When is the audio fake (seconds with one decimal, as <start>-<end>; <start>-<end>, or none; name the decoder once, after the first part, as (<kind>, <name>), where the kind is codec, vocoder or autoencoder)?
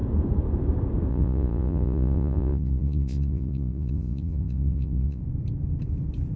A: 1.1-5.2 (vocoder, Vocos)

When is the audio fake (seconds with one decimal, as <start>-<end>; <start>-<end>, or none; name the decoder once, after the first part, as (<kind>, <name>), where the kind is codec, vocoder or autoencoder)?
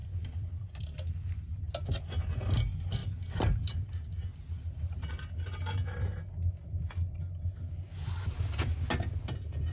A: 0.0-1.7 (vocoder, BigVGAN v2); 3.0-4.8